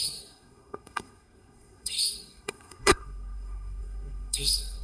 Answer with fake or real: fake